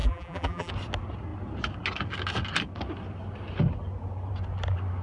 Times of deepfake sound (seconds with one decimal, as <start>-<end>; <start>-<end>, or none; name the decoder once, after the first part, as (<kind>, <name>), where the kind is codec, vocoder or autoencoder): 0.0-0.7 (vocoder, BigVGAN v2)